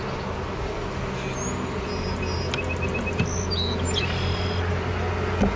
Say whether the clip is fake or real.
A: real